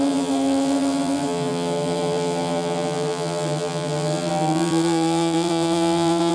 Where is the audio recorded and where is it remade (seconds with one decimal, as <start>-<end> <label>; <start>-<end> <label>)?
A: 0.0-6.3 remade